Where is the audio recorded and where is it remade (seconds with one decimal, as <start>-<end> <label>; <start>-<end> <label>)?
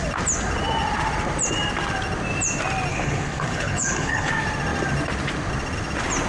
0.0-2.9 recorded; 2.9-4.3 remade; 4.3-6.3 recorded